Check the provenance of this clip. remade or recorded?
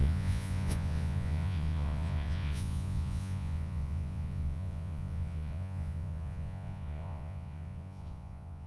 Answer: remade